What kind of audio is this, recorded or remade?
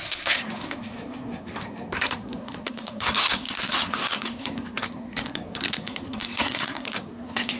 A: remade